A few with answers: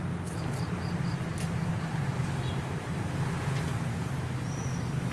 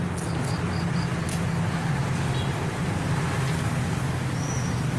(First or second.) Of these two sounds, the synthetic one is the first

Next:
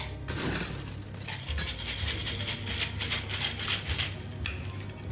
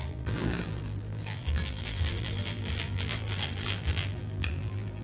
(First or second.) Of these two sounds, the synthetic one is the second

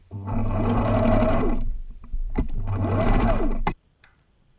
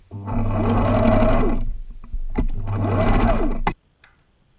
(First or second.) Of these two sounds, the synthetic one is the first